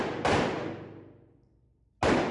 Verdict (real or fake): real